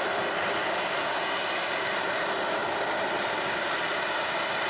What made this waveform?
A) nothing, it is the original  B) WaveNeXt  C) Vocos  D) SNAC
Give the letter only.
A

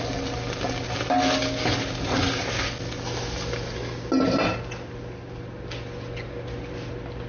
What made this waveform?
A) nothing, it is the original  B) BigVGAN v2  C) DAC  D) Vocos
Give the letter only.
A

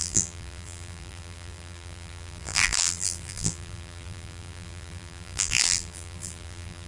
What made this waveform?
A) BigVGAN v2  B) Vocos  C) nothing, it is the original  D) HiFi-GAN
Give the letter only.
A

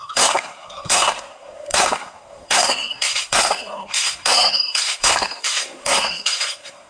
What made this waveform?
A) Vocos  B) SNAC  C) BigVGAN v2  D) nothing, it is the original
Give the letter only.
B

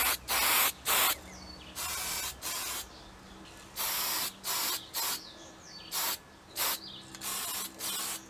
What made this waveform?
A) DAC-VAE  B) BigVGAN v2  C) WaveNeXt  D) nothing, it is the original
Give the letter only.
D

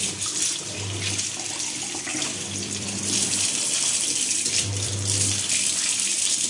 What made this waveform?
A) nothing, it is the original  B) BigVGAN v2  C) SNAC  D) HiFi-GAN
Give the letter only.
B